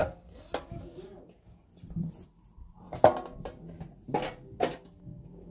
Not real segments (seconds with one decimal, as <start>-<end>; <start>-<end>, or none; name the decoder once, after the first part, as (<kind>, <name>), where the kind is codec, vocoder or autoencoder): 0.6-1.7 (codec, DAC); 5.0-5.5